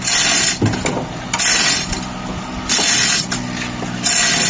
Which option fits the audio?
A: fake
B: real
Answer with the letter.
B